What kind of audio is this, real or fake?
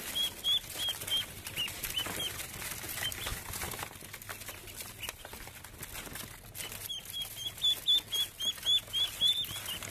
real